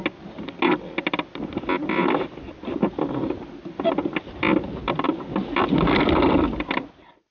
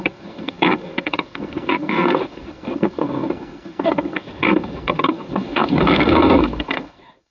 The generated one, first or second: second